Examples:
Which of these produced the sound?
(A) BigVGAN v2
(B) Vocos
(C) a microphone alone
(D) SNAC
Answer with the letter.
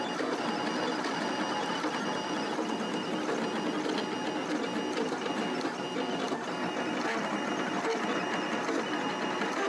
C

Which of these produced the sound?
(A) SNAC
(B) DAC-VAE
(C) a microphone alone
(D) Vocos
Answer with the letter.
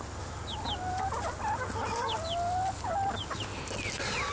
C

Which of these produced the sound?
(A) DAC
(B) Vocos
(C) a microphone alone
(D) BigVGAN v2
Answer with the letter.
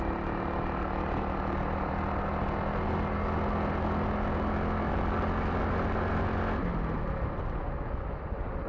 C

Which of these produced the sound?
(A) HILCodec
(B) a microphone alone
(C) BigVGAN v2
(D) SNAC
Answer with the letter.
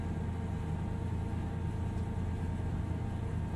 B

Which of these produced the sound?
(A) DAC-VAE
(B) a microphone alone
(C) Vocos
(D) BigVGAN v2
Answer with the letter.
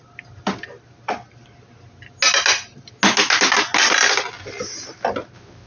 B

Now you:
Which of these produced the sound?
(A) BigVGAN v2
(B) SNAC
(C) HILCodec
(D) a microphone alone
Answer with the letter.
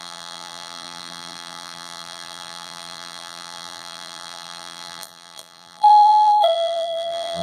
A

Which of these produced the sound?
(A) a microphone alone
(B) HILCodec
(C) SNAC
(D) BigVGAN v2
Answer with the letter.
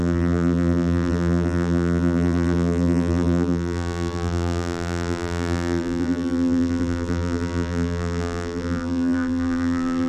D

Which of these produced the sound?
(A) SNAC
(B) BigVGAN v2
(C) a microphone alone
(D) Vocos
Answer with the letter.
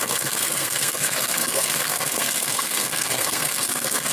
A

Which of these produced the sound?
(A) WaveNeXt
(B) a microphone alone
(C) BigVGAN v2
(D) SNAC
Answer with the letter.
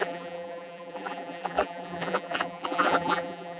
C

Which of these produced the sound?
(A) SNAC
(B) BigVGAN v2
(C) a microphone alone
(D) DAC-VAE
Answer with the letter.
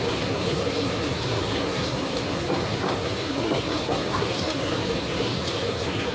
A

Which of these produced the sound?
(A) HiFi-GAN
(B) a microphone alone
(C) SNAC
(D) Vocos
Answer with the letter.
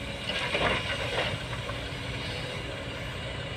B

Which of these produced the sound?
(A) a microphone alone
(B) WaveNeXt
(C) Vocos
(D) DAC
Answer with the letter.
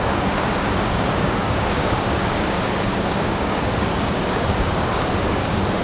D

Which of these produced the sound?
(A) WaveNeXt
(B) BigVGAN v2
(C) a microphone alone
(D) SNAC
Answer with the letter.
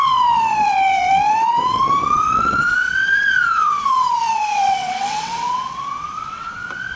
A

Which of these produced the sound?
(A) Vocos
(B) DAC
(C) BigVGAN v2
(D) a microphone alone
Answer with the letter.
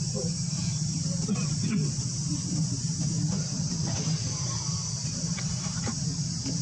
C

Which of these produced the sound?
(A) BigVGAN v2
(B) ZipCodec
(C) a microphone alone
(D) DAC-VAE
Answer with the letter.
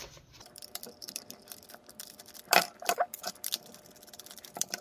A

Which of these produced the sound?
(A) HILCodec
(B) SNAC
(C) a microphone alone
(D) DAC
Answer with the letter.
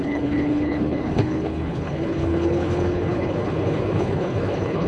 A